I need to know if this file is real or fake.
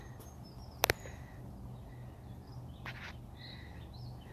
real